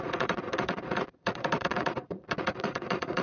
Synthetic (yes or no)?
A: yes